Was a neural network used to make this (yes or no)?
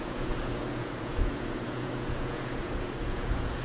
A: yes